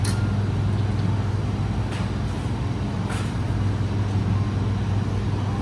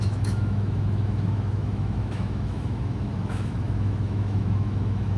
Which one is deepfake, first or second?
second